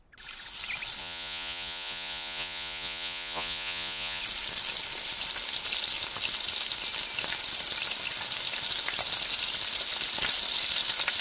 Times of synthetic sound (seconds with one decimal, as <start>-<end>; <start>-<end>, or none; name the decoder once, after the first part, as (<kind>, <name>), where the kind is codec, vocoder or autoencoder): 1.0-4.2 (vocoder, Vocos)

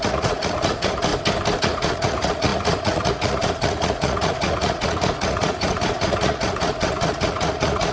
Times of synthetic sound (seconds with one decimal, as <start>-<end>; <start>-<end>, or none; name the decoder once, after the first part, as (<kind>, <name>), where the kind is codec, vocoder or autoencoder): 0.0-1.1 (vocoder, Vocos); 1.6-7.9

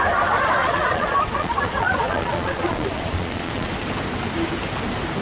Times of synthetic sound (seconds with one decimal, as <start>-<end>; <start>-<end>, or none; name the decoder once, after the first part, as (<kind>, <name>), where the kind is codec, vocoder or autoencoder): 0.6-3.7 (vocoder, Vocos)

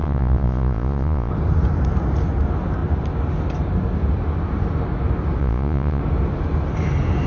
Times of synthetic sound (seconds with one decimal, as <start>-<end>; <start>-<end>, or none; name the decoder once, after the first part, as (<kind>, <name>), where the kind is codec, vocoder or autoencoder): 0.0-1.3 (vocoder, Vocos); 5.4-6.0

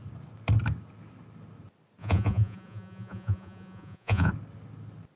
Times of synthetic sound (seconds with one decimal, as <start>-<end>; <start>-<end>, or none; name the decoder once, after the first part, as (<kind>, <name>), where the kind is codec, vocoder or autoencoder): 2.0-4.3 (vocoder, Vocos)